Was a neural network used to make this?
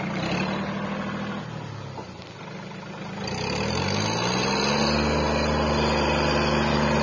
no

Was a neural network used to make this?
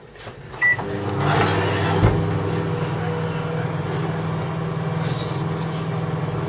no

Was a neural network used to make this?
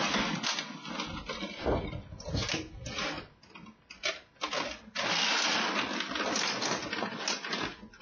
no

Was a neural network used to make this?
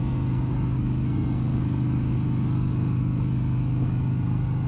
yes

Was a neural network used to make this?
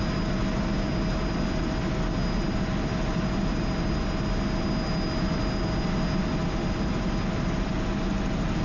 no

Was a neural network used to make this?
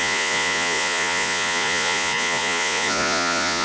yes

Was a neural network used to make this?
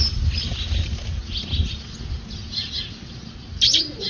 no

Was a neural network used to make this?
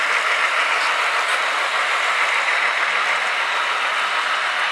no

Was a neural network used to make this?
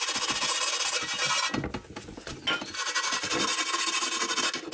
no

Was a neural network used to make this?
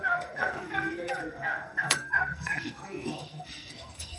yes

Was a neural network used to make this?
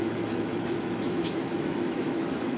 yes